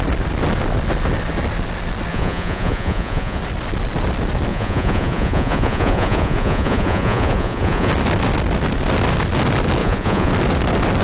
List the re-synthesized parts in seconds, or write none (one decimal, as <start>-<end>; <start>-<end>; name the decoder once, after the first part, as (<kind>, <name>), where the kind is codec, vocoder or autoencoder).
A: 2.1-3.4 (vocoder, Vocos); 4.5-7.9; 9.8-10.3